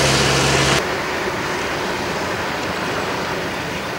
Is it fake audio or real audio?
real